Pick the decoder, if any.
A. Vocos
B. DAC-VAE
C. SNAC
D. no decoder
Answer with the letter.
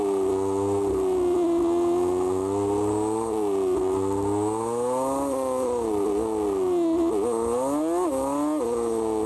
D